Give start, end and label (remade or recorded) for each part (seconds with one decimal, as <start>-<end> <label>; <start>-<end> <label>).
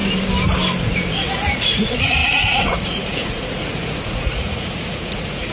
0.0-1.1 recorded; 1.1-5.5 remade